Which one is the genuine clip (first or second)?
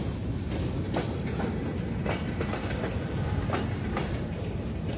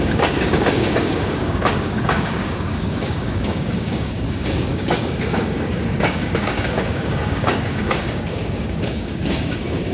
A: first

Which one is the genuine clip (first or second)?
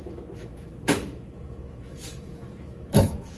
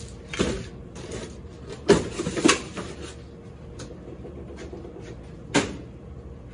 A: second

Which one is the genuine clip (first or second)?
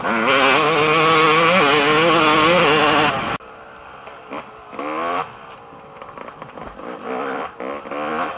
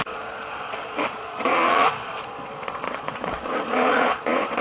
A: first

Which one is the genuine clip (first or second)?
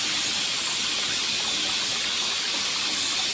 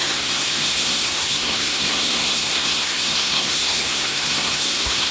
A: first